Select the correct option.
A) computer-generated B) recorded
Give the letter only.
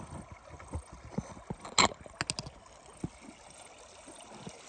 B